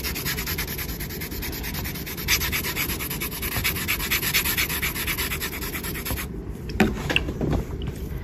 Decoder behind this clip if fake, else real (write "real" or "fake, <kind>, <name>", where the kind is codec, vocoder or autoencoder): real